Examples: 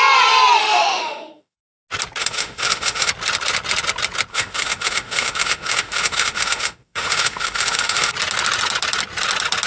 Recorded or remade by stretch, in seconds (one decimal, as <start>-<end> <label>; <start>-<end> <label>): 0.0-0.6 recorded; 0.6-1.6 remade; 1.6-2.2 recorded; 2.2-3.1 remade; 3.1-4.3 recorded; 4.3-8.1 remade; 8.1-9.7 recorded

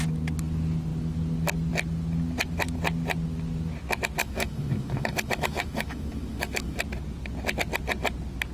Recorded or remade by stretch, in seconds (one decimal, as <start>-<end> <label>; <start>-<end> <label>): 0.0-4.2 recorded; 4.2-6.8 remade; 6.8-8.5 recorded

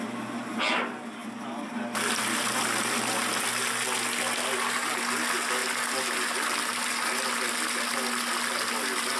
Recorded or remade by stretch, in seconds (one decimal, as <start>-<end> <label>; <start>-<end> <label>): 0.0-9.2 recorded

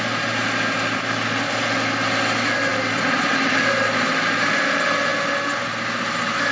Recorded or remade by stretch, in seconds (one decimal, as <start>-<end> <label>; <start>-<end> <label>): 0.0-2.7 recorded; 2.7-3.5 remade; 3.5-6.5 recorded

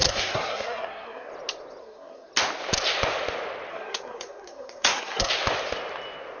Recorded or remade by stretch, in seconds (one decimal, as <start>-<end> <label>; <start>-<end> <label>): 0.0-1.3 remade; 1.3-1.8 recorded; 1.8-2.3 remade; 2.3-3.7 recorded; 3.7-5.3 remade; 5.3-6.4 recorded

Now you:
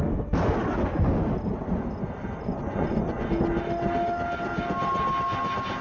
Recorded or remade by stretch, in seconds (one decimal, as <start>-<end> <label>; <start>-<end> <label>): 0.0-2.5 recorded; 2.5-3.3 remade; 3.3-5.8 recorded

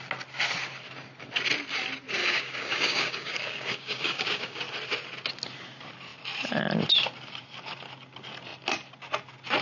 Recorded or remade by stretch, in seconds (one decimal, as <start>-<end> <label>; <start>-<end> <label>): 0.0-2.2 recorded; 2.2-4.6 remade; 4.6-9.6 recorded